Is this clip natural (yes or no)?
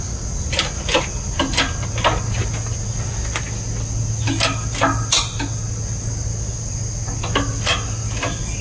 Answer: yes